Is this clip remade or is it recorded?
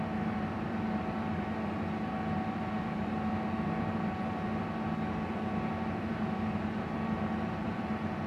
remade